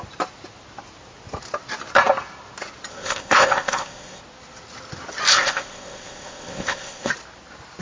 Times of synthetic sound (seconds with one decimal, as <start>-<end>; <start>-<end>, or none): 2.9-4.2; 5.3-7.1